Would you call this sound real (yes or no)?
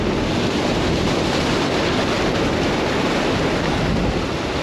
yes